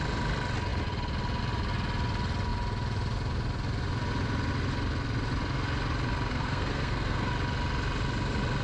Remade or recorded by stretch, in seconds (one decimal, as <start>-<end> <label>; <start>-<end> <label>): 0.0-6.3 recorded; 6.3-7.3 remade; 7.3-8.6 recorded